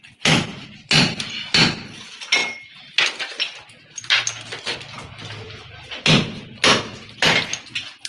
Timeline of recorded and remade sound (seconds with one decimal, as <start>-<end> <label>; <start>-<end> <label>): 0.0-0.5 recorded; 0.5-1.3 remade; 1.3-8.1 recorded